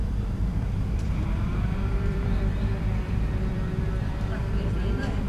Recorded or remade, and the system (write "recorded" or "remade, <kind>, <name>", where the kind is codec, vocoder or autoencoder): remade, vocoder, BigVGAN v2